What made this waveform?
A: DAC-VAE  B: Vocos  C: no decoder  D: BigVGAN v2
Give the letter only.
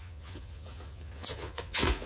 B